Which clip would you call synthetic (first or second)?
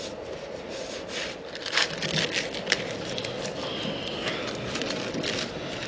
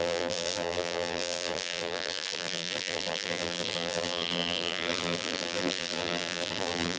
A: second